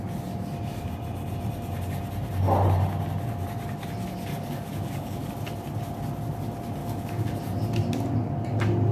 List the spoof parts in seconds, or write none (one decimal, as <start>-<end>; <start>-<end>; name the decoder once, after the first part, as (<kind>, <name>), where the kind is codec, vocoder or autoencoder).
4.3-5.3 (codec, DAC); 6.8-7.3